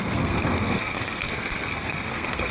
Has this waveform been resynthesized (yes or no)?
yes